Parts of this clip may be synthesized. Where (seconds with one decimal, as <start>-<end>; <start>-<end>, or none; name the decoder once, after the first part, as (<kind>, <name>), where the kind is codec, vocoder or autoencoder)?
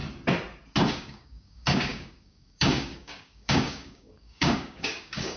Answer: 0.9-5.4 (codec, DAC)